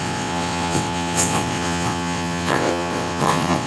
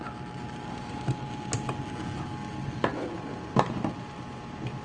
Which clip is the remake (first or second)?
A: first